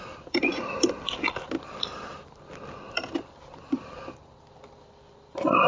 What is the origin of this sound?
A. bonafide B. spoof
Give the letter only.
A